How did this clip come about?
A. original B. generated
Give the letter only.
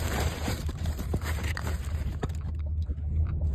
B